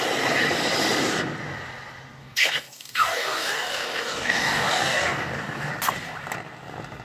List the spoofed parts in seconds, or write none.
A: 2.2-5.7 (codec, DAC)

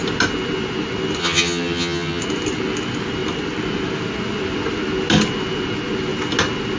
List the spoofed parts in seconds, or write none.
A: 1.2-2.2 (vocoder, HiFi-GAN)

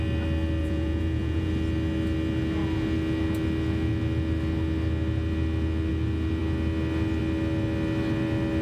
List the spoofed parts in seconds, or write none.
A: 0.6-1.5 (vocoder, Vocos)

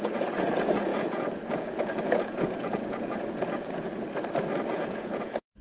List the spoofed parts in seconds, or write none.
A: 0.0-3.9 (vocoder, Vocos); 4.7-5.6

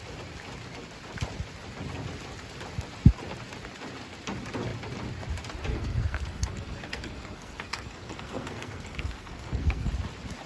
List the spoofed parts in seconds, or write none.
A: 5.7-9.9 (codec, SNAC)

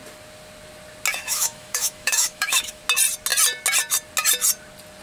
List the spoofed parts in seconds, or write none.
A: 1.1-2.8 (autoencoder, DAC-VAE)

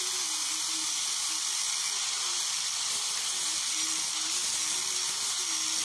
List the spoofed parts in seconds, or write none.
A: none

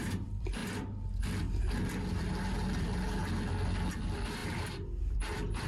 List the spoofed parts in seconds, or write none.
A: 0.0-0.6 (vocoder, BigVGAN v2); 4.0-5.7